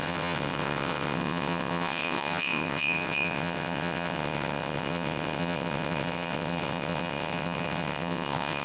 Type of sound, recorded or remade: remade